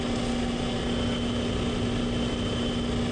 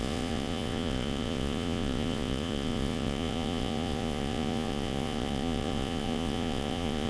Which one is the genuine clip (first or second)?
first